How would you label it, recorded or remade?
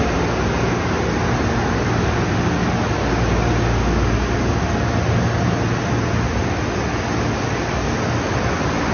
recorded